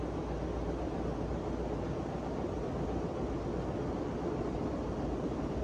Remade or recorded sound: recorded